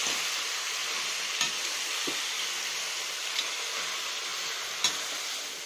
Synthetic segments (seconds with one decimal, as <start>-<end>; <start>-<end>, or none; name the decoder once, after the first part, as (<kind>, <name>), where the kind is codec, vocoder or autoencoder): none